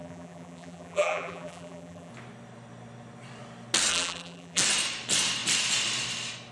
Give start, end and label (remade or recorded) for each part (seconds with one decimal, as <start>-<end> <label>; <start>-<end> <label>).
0.0-2.1 remade; 2.1-3.9 recorded; 3.9-4.6 remade; 4.6-6.5 recorded